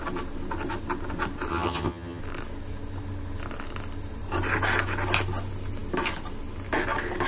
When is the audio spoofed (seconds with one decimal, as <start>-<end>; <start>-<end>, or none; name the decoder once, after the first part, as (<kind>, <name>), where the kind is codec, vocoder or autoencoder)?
1.5-2.2 (vocoder, HiFi-GAN)